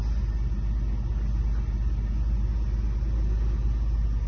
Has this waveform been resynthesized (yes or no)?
no